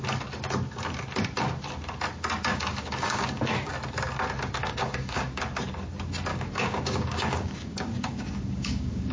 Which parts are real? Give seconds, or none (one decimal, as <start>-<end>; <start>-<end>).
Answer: 0.0-2.5; 3.7-4.6; 5.4-6.3